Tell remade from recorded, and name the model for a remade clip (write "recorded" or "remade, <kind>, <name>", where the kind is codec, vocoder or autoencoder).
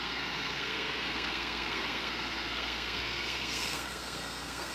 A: remade, codec, SNAC